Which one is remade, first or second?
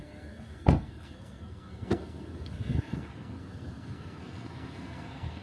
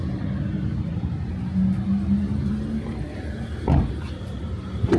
first